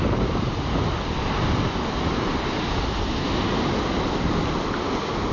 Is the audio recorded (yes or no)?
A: yes